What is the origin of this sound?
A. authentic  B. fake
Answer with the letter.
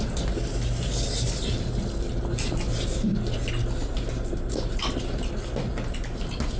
A